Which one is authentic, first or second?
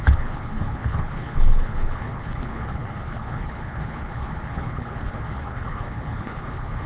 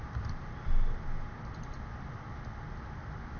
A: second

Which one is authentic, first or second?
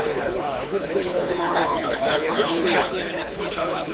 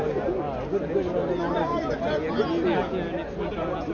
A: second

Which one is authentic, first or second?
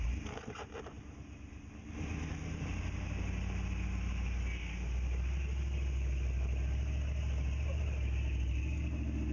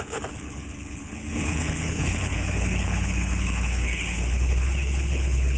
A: first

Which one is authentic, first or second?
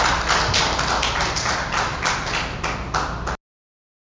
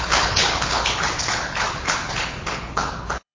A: first